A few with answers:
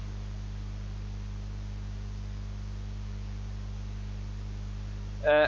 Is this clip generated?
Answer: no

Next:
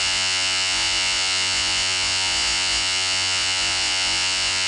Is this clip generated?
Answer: yes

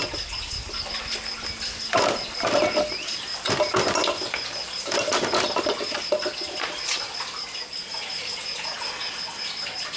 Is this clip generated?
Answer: no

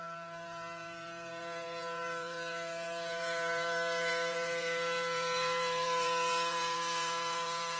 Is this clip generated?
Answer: yes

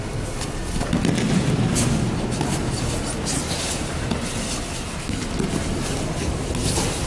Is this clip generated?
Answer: no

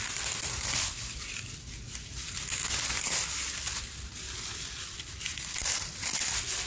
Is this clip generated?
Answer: no